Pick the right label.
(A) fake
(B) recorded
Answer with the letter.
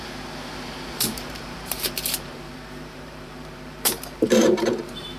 A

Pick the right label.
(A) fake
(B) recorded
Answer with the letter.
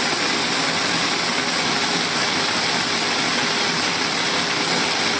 B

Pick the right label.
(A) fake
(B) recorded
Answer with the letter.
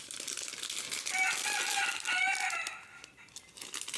B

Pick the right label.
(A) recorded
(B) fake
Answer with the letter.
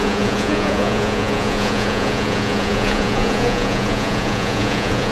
B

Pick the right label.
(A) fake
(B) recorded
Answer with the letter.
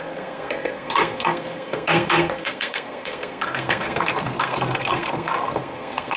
A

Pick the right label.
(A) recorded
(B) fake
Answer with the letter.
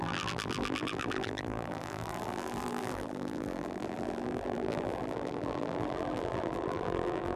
B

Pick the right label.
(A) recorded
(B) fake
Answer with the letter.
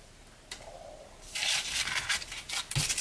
A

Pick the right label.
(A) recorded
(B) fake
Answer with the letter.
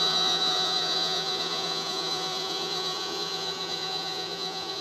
B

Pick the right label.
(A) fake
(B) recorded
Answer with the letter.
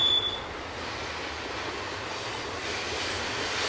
B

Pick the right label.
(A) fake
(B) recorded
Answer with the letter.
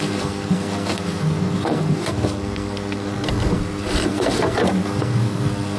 A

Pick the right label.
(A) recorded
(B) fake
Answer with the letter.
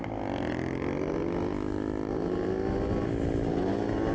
A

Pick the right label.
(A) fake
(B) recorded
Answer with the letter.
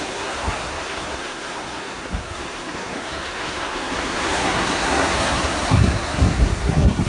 A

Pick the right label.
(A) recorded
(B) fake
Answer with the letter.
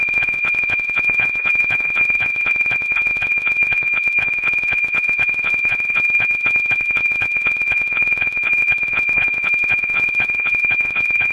B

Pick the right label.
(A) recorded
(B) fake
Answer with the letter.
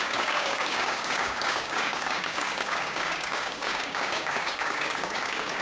B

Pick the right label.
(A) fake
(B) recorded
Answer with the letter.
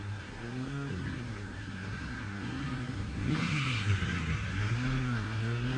A